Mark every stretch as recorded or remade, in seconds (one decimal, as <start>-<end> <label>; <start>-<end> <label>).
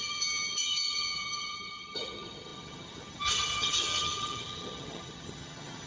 0.0-5.9 remade